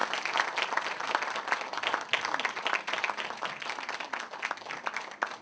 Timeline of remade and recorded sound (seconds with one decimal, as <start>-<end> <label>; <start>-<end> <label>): 0.0-5.4 recorded